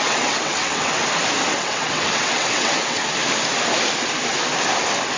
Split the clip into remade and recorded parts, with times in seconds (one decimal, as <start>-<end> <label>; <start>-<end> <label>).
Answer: 0.0-1.0 remade; 1.0-1.5 recorded; 1.5-3.0 remade; 3.0-5.2 recorded